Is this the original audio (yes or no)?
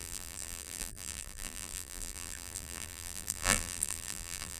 no